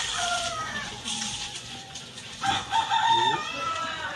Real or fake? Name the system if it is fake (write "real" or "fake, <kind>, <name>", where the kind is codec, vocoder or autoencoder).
fake, vocoder, Vocos